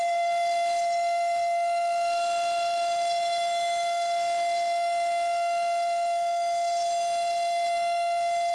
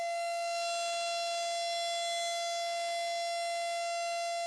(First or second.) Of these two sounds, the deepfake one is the first